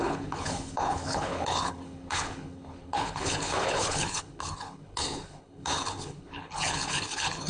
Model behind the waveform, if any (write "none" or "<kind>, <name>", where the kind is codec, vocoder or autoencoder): codec, HILCodec